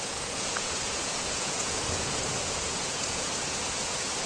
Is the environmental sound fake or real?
fake